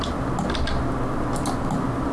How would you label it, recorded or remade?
recorded